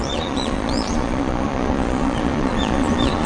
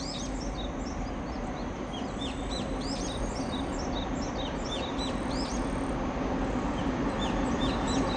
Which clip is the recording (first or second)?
second